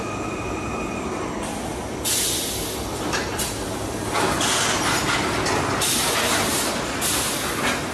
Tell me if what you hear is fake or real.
real